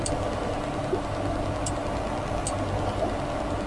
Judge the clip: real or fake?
real